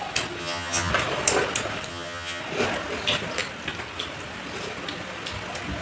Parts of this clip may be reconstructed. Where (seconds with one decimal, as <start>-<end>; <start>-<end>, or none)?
0.4-0.9; 1.9-2.4